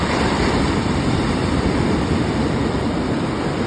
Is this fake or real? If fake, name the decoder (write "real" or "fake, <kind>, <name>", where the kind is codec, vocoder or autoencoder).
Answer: fake, vocoder, BigVGAN v2